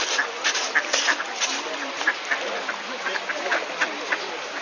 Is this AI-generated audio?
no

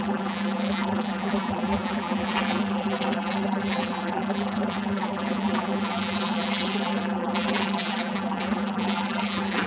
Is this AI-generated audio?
yes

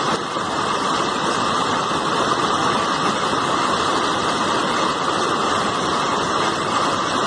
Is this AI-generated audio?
no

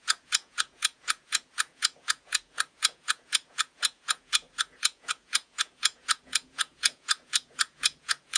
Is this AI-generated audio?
yes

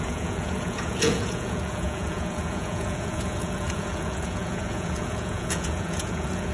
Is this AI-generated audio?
yes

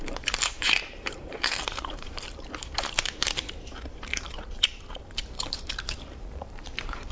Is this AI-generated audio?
yes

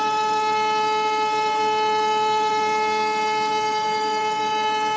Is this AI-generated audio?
yes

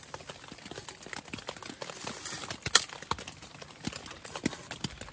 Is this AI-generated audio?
no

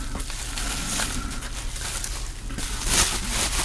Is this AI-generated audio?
no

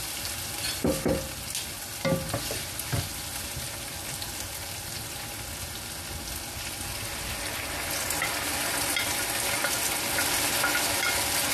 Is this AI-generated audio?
no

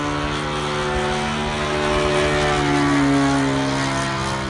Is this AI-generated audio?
no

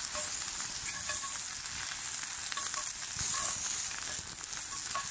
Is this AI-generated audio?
no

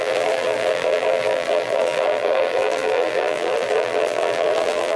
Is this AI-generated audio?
yes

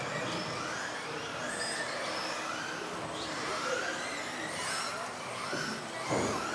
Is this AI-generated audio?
no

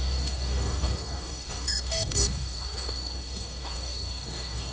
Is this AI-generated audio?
yes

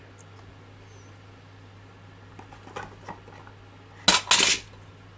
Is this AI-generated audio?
no